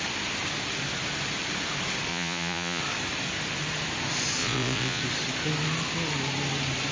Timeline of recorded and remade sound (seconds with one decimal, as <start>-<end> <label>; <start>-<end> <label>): 0.0-2.1 recorded; 2.1-2.8 remade; 2.8-4.4 recorded; 4.4-5.0 remade; 5.0-6.9 recorded